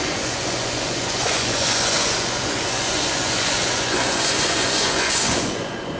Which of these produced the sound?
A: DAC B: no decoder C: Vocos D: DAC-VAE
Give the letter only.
C